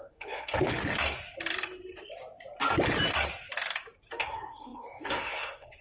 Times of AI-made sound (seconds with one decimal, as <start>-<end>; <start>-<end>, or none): 0.0-0.7; 4.2-5.8